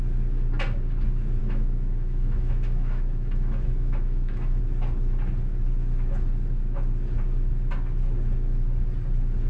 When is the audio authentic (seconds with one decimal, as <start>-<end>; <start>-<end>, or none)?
0.0-1.4; 4.6-9.5